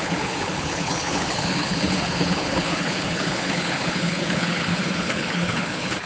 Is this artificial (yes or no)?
yes